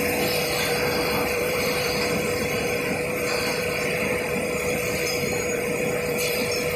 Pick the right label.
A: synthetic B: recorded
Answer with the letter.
A